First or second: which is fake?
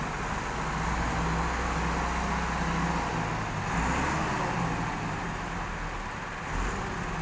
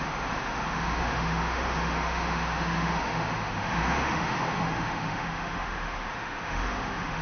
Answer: second